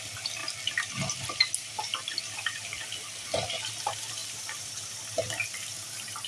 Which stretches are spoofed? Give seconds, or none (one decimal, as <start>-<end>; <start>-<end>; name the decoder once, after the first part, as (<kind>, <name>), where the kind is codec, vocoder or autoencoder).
0.4-3.7 (vocoder, BigVGAN v2)